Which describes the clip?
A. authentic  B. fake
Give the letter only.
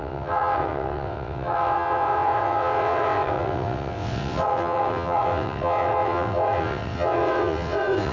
B